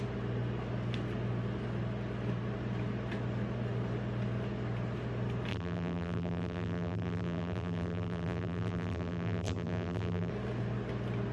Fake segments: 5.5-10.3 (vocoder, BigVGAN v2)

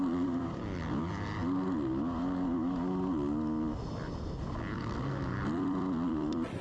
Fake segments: 0.0-1.4 (vocoder, BigVGAN v2); 5.4-6.6

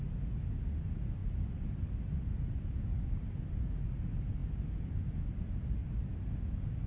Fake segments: 1.2-3.6 (vocoder, BigVGAN v2); 4.4-5.0

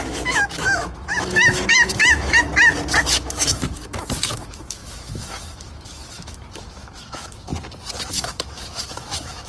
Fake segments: 0.0-2.5 (autoencoder, DAC-VAE); 3.0-7.5; 8.1-9.5